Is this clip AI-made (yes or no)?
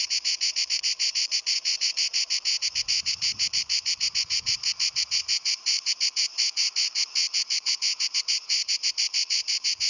yes